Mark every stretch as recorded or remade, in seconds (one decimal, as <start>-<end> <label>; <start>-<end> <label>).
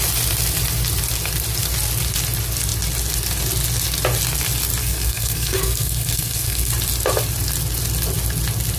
0.0-4.8 recorded; 4.8-6.7 remade; 6.7-8.8 recorded